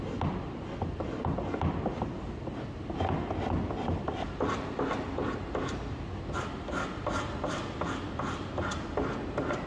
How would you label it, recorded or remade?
recorded